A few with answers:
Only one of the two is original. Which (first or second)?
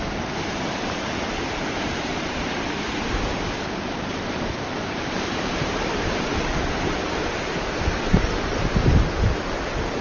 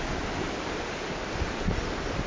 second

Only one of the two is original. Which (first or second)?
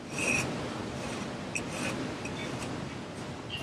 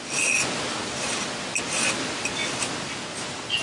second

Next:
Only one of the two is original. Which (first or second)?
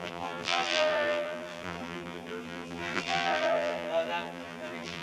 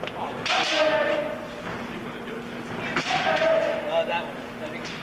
second